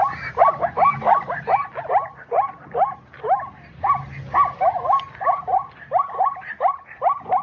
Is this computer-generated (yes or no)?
no